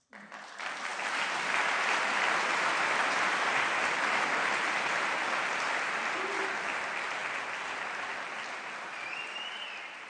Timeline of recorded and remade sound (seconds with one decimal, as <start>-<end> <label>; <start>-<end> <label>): 0.0-7.2 remade; 7.2-9.3 recorded; 9.3-10.1 remade